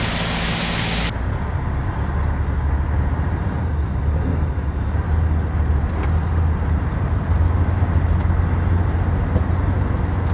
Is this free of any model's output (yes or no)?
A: yes